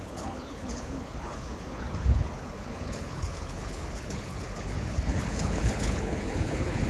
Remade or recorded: remade